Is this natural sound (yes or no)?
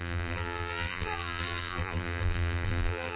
no